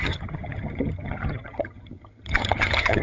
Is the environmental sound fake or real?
fake